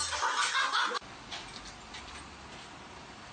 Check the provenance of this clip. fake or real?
real